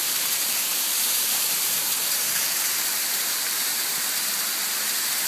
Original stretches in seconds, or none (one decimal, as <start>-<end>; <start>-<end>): 0.0-0.7; 3.9-5.3